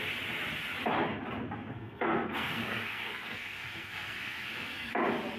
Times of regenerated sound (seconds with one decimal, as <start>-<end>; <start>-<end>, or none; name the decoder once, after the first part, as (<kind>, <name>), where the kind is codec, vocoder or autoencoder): 1.7-4.9 (codec, SNAC)

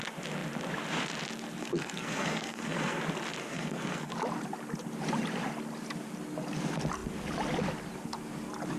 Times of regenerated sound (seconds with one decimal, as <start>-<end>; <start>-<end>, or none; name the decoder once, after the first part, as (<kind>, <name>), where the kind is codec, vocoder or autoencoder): 1.6-3.0 (codec, SNAC); 3.4-4.1

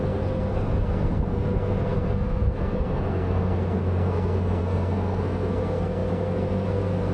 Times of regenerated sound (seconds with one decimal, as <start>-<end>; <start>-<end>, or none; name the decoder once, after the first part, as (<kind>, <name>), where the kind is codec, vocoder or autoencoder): 0.0-7.1 (codec, SNAC)

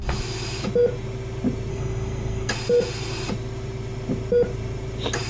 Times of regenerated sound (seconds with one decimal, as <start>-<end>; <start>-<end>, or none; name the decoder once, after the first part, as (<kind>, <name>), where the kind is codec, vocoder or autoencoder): 1.7-2.5 (codec, SNAC)

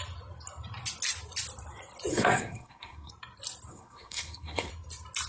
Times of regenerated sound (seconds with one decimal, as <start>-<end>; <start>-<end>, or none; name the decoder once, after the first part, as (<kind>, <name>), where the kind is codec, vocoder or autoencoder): 2.1-3.1 (codec, SNAC); 3.7-4.7